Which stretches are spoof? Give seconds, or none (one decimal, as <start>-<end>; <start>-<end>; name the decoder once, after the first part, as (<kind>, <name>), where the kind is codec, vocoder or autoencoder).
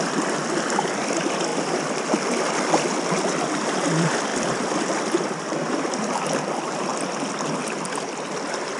1.5-2.0 (vocoder, BigVGAN v2); 4.3-6.0